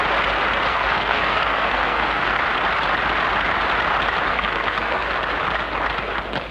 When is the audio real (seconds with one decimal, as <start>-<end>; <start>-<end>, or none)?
0.0-0.7; 2.4-4.3; 5.1-6.5